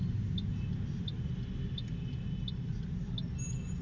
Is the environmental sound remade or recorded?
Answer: recorded